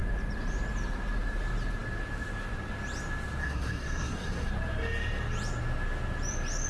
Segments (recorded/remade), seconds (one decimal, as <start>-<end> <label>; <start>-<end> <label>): 0.0-3.4 recorded; 3.4-4.5 remade; 4.5-6.7 recorded

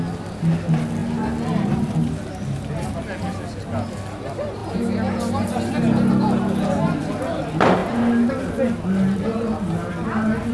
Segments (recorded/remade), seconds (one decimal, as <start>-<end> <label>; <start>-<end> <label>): 0.0-10.5 recorded

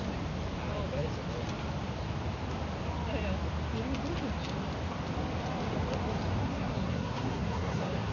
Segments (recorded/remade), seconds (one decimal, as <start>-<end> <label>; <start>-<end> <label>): 0.0-6.4 recorded; 6.4-8.1 remade

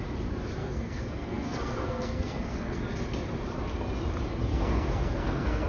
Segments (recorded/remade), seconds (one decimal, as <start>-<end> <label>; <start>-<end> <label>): 0.0-0.6 recorded; 0.6-2.8 remade; 2.8-4.5 recorded; 4.5-5.7 remade

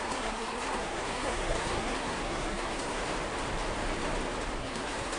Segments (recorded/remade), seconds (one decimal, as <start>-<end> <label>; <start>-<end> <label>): 0.0-3.0 remade; 3.0-4.6 recorded; 4.6-5.2 remade